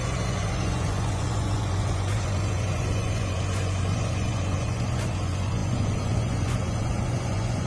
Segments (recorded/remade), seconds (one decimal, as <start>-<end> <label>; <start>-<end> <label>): 0.0-7.7 remade

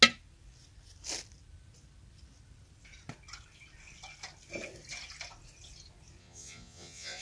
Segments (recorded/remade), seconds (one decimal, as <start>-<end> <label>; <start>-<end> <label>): 0.0-6.2 recorded; 6.2-7.2 remade

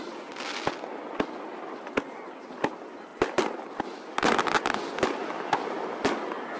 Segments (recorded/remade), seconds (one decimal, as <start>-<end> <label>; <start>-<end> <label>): 0.0-6.6 recorded

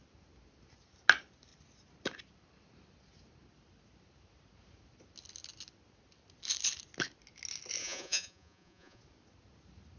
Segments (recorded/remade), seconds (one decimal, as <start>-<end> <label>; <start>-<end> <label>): 0.0-7.8 recorded; 7.8-9.0 remade; 9.0-10.0 recorded

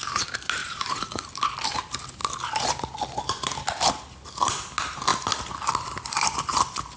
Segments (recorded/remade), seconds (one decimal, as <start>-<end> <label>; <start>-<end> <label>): 0.0-0.6 recorded; 0.6-1.3 remade; 1.3-7.0 recorded

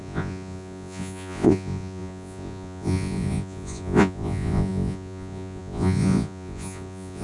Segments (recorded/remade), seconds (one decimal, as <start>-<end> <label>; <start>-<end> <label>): 0.0-7.2 remade

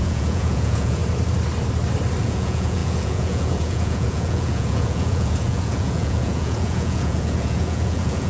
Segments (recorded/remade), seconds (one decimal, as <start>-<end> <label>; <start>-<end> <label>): 0.0-1.0 remade; 1.0-2.2 recorded; 2.2-8.3 remade